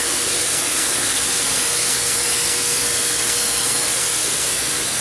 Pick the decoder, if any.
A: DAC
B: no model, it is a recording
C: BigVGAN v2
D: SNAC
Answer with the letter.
D